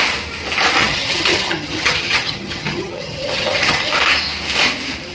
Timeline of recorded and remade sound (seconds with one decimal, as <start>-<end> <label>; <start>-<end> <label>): 0.0-0.8 recorded; 0.8-3.9 remade; 3.9-5.1 recorded